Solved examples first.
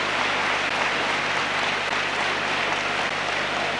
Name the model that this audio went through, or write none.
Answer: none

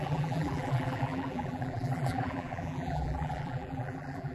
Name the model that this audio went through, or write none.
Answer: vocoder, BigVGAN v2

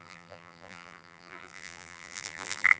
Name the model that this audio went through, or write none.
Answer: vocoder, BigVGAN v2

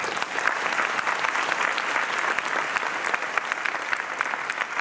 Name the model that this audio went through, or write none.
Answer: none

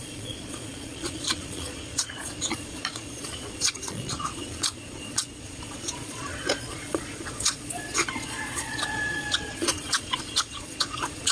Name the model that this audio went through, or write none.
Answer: vocoder, Vocos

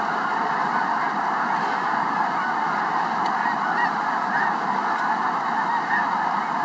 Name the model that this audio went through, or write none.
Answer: none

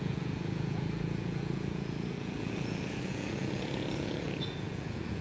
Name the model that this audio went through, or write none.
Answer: vocoder, Vocos